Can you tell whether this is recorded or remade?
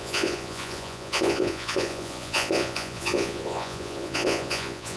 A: remade